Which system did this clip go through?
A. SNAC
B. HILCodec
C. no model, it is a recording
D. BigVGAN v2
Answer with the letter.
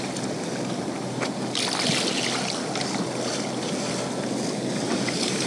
C